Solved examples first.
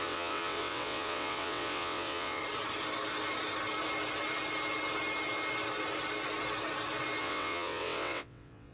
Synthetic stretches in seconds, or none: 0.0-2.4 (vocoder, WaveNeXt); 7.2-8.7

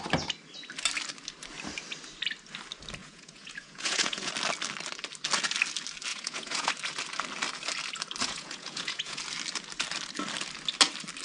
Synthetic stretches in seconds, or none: 3.0-4.3 (vocoder, Vocos); 6.1-6.7; 8.2-9.2

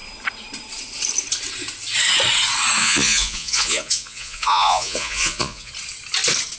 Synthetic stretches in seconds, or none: 2.8-5.7 (vocoder, Vocos)

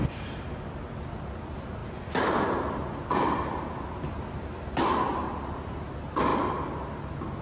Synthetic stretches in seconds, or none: none

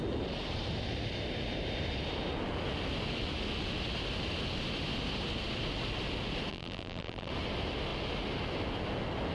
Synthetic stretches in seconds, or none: 6.5-7.3 (vocoder, BigVGAN v2)